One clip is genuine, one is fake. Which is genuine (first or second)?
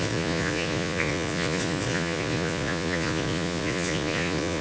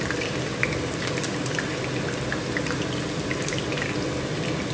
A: second